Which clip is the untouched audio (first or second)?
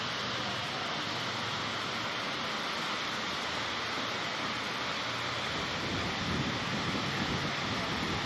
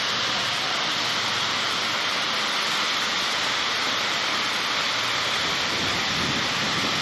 first